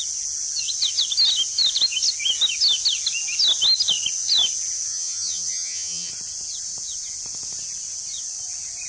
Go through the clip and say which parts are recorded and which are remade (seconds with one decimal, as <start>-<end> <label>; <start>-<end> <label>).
0.0-4.9 recorded; 4.9-6.1 remade; 6.1-8.9 recorded